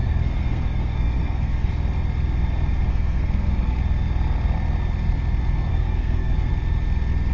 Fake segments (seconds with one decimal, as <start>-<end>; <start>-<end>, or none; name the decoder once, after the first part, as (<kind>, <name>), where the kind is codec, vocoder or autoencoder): 0.0-1.7 (codec, SNAC); 2.9-3.8; 5.7-6.5